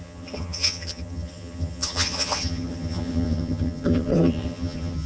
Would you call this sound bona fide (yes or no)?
no